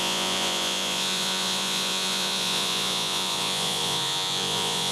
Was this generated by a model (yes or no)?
yes